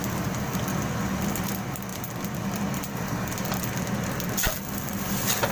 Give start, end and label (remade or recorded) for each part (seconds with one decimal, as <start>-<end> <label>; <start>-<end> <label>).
0.0-5.5 recorded